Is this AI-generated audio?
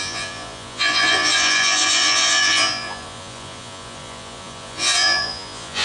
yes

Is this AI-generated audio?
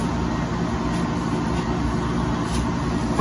no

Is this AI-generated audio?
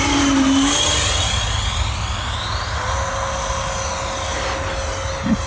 no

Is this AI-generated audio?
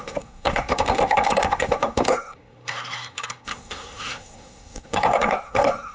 yes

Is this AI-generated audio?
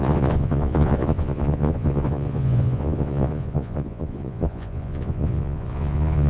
yes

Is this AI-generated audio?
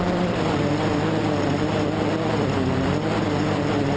no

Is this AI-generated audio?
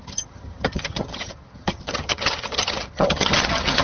yes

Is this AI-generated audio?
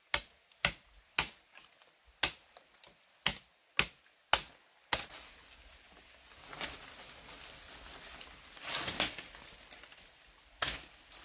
no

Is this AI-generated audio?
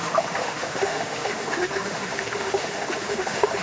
yes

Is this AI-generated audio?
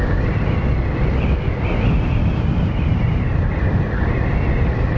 no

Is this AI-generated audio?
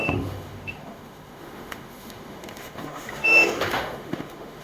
yes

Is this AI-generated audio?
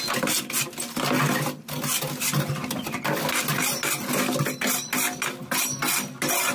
no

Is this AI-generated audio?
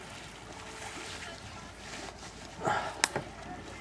no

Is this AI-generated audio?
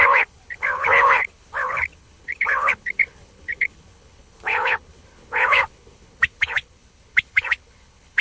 yes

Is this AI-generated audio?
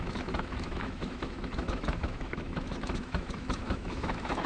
yes